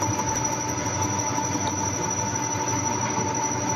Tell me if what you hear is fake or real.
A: real